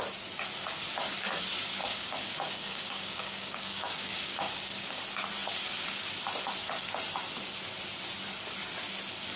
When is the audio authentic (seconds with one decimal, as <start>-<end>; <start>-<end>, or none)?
0.0-1.8; 5.0-9.4